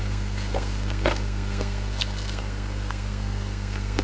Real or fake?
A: fake